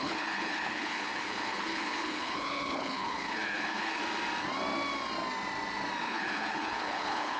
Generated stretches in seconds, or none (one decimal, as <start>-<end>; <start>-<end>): 0.0-4.0; 6.0-7.4